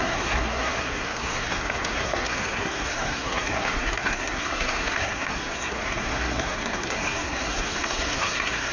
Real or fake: fake